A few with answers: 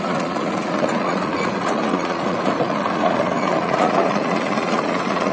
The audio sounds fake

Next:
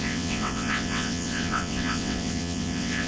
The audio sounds fake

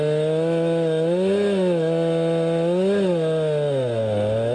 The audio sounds real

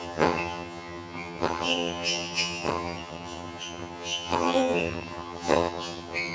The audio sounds fake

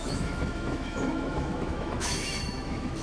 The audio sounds fake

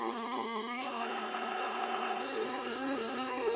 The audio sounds fake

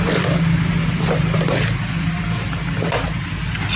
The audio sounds real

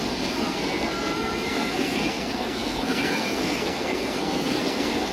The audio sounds fake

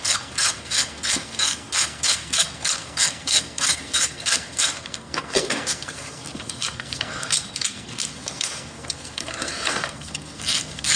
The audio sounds fake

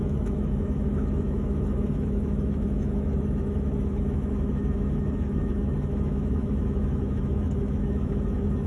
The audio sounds fake